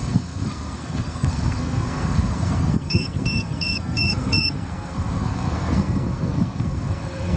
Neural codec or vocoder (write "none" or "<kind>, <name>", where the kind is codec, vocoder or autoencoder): codec, SNAC